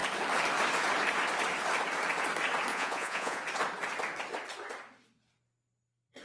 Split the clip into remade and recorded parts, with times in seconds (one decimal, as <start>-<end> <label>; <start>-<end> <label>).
0.0-2.7 recorded; 2.7-3.4 remade; 3.4-6.2 recorded